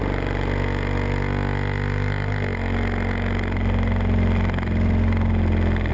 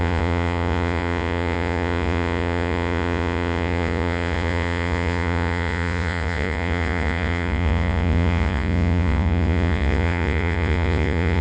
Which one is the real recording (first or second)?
first